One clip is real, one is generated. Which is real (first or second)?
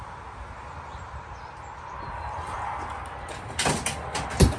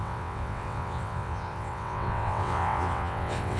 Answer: first